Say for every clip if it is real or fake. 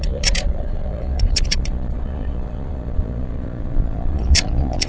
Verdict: fake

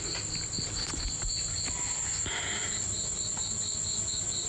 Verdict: real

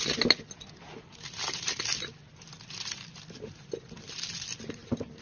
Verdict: real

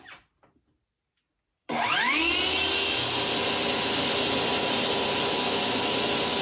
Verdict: real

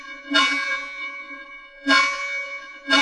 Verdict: fake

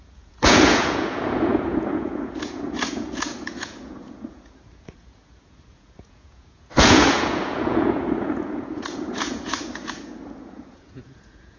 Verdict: fake